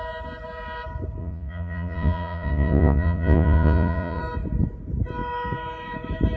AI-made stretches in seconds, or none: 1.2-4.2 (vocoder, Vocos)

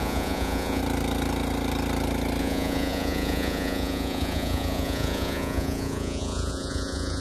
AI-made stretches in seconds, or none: 0.0-0.8 (vocoder, Vocos); 2.4-7.2

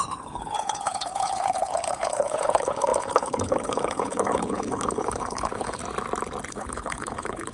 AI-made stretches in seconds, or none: 0.0-5.8 (codec, HILCodec); 6.5-7.5

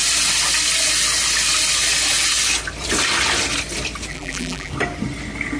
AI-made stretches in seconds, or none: 4.1-4.7 (vocoder, BigVGAN v2)

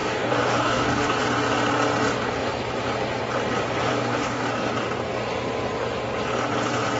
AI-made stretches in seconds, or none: 0.0-1.2 (codec, DAC); 3.9-4.5

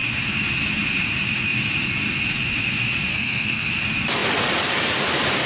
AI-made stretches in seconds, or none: 3.1-3.7 (codec, SNAC)

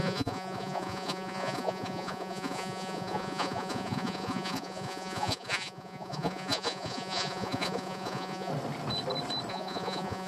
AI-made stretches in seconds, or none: 0.0-8.5 (vocoder, Vocos); 9.5-10.3